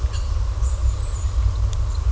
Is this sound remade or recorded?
recorded